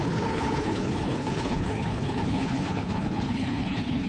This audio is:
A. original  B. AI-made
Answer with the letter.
B